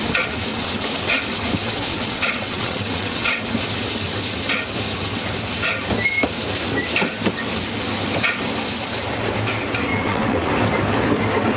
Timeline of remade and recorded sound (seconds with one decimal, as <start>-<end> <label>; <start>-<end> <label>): 0.0-0.5 recorded; 0.5-1.2 remade; 1.2-1.9 recorded; 1.9-3.4 remade; 3.4-9.9 recorded; 9.9-10.5 remade; 10.5-11.6 recorded